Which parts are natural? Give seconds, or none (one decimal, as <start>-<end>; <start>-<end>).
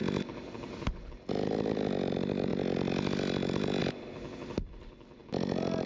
2.5-3.8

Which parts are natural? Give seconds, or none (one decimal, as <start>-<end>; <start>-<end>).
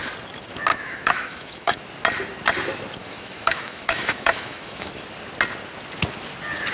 0.0-0.7; 1.8-3.0; 4.9-6.7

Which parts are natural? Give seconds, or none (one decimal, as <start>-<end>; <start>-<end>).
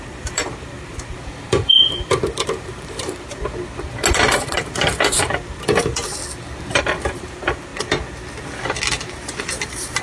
3.4-4.1; 6.2-6.8; 7.7-9.4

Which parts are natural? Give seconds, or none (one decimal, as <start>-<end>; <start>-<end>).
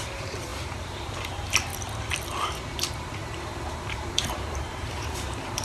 1.7-2.7